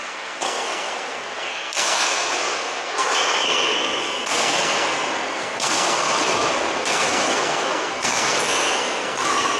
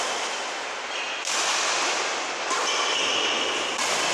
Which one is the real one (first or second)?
second